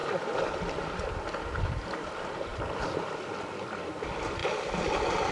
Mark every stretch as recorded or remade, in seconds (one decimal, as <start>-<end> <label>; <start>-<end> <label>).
0.0-5.3 recorded